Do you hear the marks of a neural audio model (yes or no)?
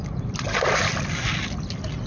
no